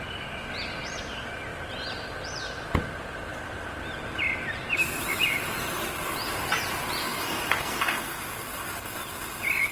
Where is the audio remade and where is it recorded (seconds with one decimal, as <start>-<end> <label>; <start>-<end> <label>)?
0.0-7.0 recorded; 7.0-8.2 remade; 8.2-9.7 recorded